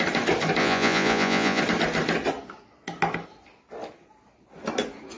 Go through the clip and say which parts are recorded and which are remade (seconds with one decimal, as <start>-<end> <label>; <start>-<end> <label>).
0.0-0.6 recorded; 0.6-1.6 remade; 1.6-5.2 recorded